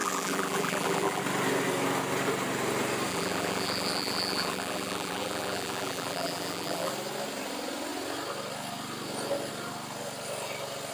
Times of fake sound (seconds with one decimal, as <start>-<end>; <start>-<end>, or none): 0.0-1.2; 3.1-6.9